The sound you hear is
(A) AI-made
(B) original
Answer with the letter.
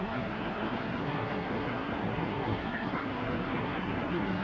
A